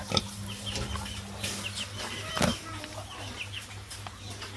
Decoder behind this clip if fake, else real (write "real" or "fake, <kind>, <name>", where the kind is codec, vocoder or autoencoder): real